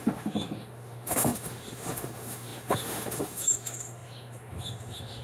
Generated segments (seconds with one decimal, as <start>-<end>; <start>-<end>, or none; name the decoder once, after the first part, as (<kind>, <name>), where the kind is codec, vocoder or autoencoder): 0.0-5.2 (autoencoder, DAC-VAE)